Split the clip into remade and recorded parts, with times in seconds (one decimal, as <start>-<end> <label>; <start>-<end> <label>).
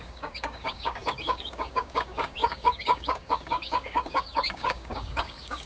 0.0-5.7 remade